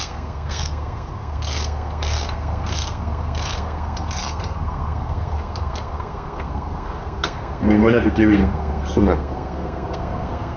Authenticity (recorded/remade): remade